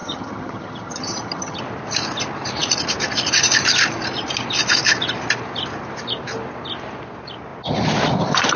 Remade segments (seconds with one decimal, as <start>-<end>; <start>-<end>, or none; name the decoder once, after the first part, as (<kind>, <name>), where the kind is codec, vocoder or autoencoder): 0.0-1.6 (vocoder, HiFi-GAN)

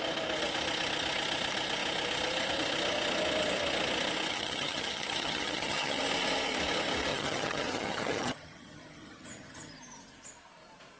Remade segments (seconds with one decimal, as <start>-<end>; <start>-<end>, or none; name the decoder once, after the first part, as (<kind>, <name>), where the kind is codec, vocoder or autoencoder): 4.3-6.0 (vocoder, HiFi-GAN); 7.1-9.7

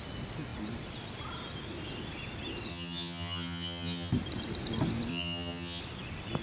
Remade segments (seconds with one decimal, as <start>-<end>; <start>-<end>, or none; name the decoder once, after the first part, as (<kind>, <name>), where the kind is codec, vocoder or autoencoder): 2.7-4.1 (vocoder, HiFi-GAN); 5.1-5.8

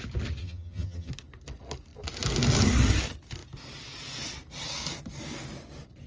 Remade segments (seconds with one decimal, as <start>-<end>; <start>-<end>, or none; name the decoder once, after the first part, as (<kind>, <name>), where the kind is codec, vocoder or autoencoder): 0.4-1.1 (vocoder, HiFi-GAN)

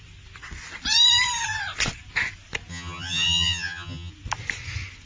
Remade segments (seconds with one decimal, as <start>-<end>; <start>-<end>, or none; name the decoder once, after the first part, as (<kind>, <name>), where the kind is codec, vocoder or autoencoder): 2.7-4.1 (vocoder, HiFi-GAN)